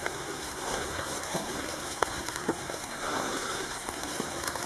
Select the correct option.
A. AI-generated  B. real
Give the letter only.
A